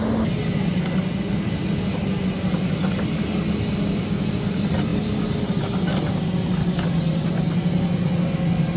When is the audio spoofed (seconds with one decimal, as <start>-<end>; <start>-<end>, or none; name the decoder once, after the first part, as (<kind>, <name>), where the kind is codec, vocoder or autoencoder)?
none